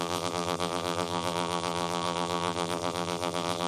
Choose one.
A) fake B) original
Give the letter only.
A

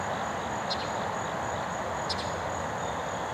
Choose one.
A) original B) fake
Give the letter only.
A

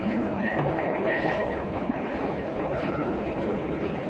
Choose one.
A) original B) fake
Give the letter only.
B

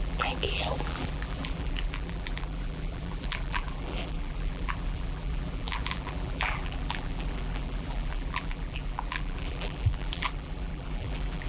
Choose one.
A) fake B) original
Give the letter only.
A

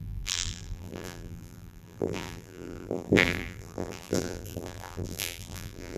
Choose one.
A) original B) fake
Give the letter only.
B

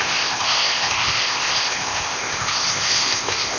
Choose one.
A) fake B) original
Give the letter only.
A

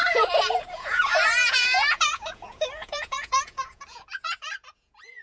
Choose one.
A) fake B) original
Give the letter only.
A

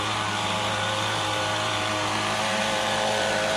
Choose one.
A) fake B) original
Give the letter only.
A